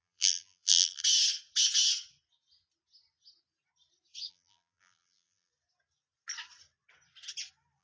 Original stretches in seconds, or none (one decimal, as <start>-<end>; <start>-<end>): 1.0-4.3; 5.5-7.8